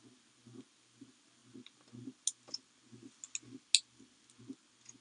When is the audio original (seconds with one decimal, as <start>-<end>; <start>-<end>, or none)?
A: 0.0-5.0